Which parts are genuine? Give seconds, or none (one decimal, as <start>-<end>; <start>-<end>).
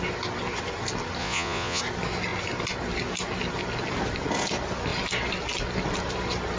0.0-1.2; 1.8-6.6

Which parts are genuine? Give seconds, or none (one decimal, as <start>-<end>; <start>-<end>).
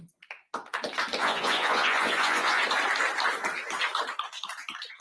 0.0-1.2; 2.6-5.0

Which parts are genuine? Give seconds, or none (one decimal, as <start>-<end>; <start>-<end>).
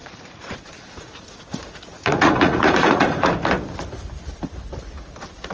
3.3-5.5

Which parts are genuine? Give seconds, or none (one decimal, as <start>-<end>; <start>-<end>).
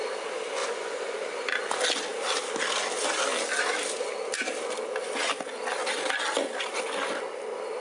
0.0-0.6; 1.7-7.8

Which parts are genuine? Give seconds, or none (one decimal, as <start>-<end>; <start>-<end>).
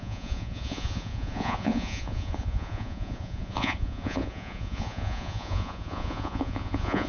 none